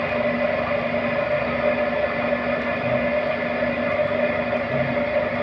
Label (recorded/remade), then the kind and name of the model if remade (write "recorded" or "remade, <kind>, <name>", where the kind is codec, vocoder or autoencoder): recorded